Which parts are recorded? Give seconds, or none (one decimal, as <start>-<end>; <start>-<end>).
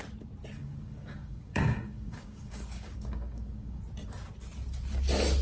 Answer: 0.0-0.6; 3.8-5.4